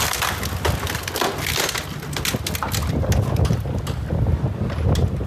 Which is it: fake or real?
real